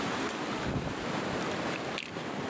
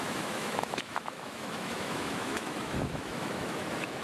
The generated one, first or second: second